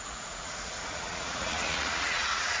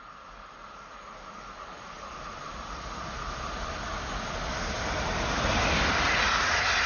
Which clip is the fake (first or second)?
first